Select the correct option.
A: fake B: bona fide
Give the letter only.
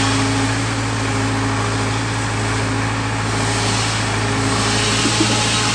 B